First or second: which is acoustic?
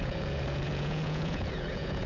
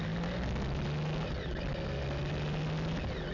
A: second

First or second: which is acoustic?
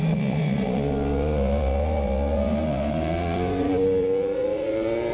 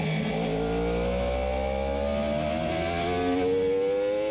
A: second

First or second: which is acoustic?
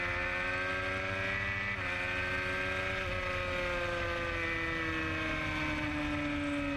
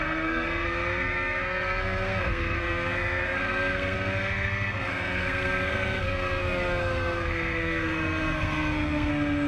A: first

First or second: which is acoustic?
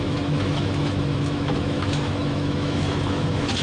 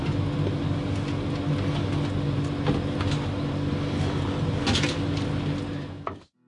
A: second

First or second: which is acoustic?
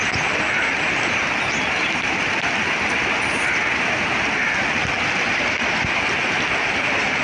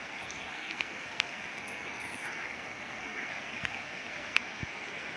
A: first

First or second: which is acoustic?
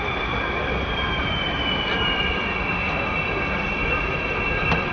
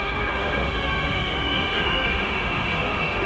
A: first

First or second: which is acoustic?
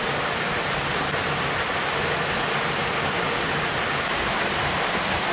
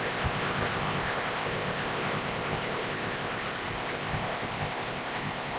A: first